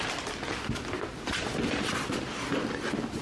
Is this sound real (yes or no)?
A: yes